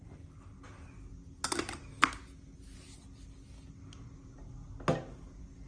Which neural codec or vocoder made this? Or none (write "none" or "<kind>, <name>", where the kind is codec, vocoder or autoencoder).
none